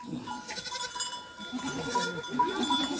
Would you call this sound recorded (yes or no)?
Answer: yes